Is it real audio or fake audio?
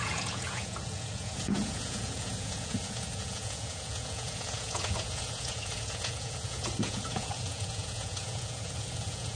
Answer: fake